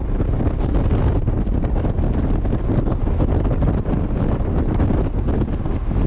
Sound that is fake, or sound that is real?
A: real